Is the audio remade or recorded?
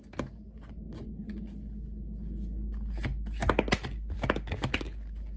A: recorded